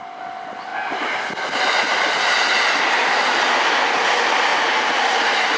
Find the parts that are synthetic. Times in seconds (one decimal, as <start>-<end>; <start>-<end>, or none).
none